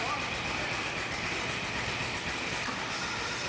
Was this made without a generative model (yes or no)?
no